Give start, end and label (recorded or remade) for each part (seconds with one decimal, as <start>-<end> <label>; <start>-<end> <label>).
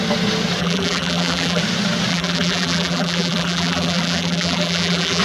0.0-0.6 recorded; 0.6-1.6 remade; 1.6-2.1 recorded; 2.1-5.2 remade